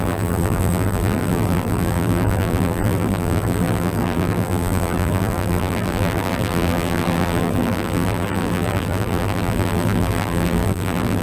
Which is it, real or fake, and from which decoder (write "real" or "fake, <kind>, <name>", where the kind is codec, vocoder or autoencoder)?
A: fake, vocoder, BigVGAN v2